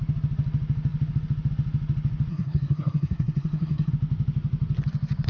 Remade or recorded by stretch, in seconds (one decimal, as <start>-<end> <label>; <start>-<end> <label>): 0.0-2.3 recorded; 2.3-3.9 remade; 3.9-5.3 recorded